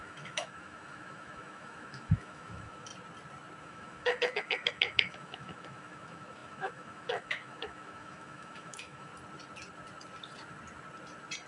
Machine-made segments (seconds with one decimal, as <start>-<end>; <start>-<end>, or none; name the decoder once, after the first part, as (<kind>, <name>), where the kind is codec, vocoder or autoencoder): 0.0-2.9 (autoencoder, DAC-VAE); 3.6-9.1